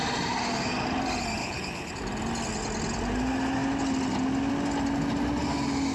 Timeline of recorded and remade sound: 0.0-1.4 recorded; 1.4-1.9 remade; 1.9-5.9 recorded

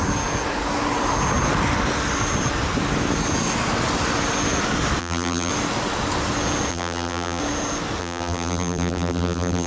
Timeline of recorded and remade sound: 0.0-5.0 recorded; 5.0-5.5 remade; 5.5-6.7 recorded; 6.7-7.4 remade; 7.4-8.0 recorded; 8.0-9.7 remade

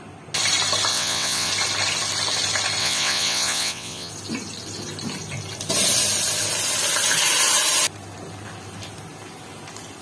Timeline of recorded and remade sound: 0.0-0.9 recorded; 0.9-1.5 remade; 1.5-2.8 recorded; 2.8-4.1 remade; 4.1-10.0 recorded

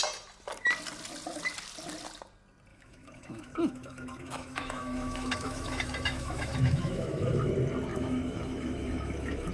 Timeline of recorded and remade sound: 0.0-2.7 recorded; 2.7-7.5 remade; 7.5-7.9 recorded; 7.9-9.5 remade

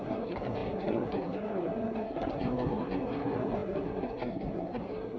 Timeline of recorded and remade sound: 0.0-5.2 remade